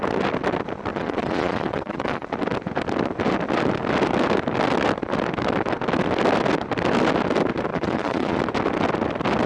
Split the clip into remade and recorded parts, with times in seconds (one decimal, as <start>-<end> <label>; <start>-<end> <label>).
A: 0.0-0.9 recorded; 0.9-2.3 remade; 2.3-7.7 recorded; 7.7-8.4 remade; 8.4-9.5 recorded